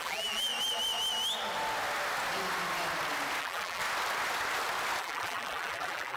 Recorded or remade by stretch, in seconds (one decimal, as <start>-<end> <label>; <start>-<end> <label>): 0.0-0.5 remade; 0.5-3.4 recorded; 3.4-3.8 remade; 3.8-5.0 recorded; 5.0-6.2 remade

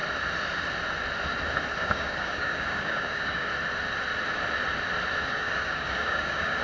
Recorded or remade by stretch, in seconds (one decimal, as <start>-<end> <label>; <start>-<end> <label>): 0.0-1.8 recorded; 1.8-3.5 remade; 3.5-5.2 recorded; 5.2-6.6 remade

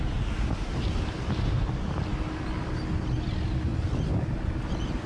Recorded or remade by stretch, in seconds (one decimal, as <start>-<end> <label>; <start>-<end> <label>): 0.0-5.1 recorded